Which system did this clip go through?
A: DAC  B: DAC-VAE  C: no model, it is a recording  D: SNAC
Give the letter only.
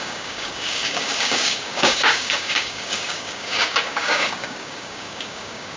A